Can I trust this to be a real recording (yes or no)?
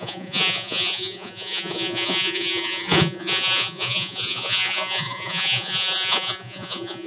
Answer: no